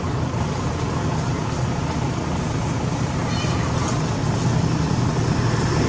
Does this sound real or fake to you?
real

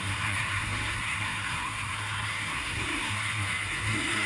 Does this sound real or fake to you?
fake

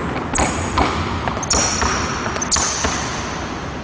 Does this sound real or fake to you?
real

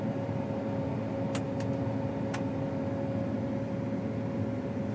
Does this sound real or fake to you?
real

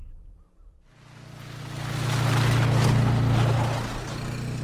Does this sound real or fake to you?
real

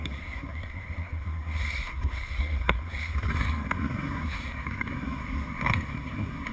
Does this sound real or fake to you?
fake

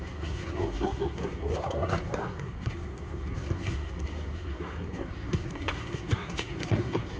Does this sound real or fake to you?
fake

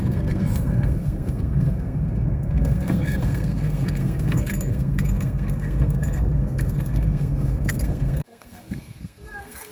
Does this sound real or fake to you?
fake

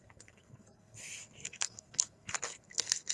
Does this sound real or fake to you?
fake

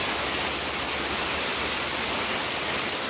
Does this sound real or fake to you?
real